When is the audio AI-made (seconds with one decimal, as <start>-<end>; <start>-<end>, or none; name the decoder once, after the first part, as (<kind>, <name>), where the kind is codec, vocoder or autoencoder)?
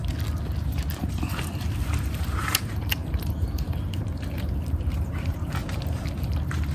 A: 1.0-5.6 (vocoder, BigVGAN v2); 6.2-6.7